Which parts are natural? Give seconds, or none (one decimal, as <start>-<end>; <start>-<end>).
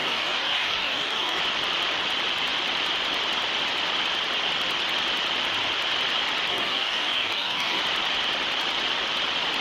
1.4-6.5; 7.8-9.6